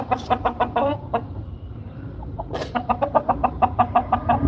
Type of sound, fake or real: fake